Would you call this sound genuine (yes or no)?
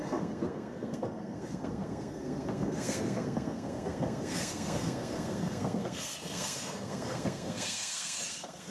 no